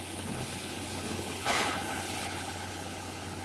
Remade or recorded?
remade